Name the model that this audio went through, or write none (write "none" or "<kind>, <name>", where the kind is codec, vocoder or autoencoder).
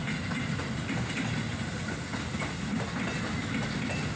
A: none